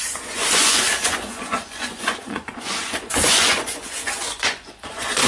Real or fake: fake